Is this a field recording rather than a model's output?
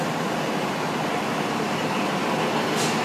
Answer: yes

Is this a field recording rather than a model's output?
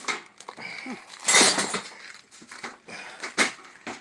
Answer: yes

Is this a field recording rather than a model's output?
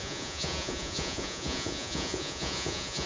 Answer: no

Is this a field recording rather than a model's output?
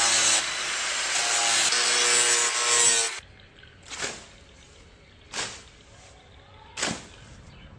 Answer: yes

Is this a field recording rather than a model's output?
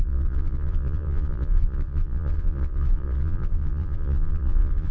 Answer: no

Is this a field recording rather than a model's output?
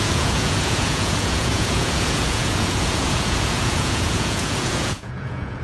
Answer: no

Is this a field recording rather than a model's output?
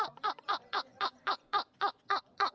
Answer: no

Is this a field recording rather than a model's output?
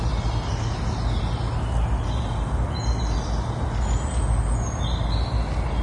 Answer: yes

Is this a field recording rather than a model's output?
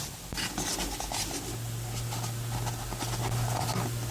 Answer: yes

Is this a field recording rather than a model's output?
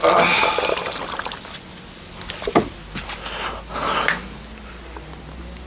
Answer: yes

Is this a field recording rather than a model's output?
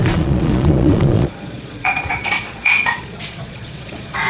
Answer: no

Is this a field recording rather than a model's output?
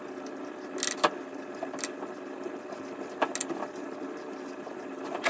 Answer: yes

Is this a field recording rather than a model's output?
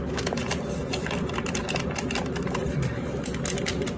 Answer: yes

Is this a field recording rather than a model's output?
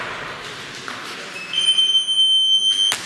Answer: yes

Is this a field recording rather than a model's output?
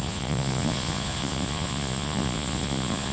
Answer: no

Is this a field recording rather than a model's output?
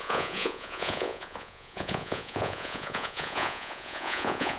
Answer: no